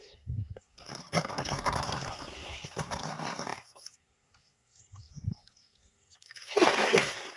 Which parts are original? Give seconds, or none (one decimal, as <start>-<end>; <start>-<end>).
none